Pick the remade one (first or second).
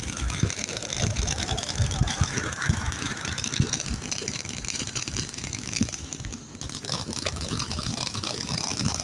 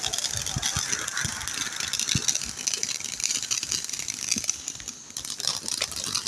first